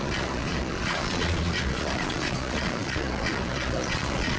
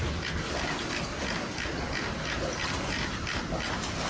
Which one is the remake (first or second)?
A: first